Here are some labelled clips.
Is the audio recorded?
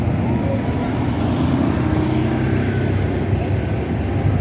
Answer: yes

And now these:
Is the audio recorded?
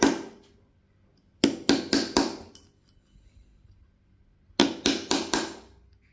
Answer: yes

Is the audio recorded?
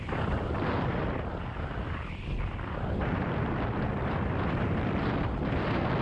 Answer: yes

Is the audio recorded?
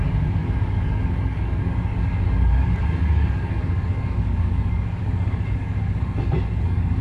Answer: no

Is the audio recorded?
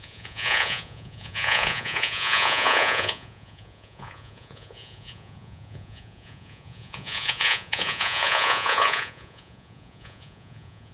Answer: no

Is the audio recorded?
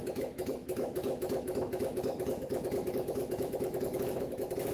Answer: no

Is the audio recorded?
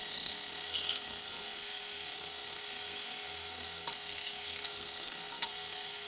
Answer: no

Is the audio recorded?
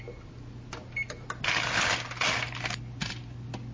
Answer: yes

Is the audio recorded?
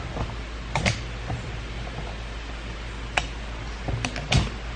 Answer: yes